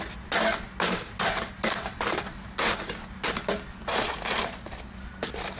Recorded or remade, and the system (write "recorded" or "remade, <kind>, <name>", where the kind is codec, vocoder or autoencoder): recorded